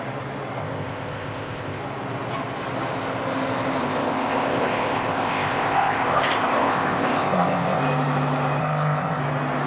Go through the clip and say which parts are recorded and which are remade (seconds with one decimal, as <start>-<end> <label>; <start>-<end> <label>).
0.0-0.6 recorded; 0.6-1.8 remade; 1.8-3.8 recorded; 3.8-7.8 remade; 7.8-8.6 recorded; 8.6-9.2 remade; 9.2-9.7 recorded